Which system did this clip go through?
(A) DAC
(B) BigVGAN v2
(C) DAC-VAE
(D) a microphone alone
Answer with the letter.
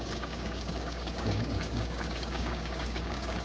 A